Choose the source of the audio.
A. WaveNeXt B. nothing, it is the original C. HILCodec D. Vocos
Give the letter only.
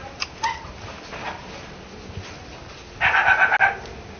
B